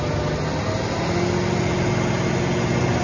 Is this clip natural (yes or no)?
yes